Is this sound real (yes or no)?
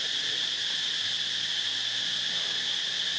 yes